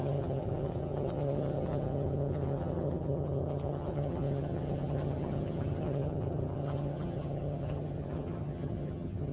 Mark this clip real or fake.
fake